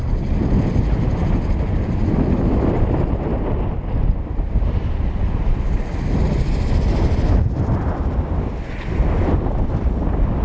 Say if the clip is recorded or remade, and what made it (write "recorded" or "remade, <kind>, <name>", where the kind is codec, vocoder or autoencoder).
remade, vocoder, BigVGAN v2